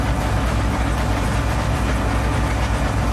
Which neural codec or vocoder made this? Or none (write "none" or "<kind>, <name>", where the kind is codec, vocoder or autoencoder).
none